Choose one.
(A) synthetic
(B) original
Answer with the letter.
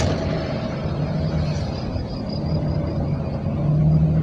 B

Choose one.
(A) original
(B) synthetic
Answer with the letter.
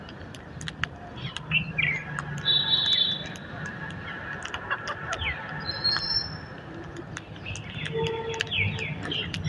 A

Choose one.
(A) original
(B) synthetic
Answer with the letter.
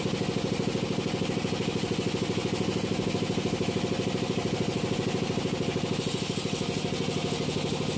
A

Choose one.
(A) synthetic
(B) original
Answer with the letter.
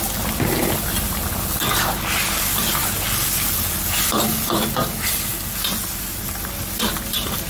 B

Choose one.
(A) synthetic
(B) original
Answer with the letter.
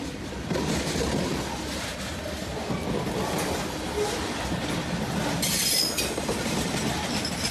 B